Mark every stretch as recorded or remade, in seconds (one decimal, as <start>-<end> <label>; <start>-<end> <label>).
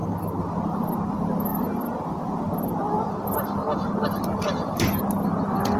0.0-5.8 recorded